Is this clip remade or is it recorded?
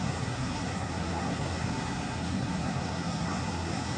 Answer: remade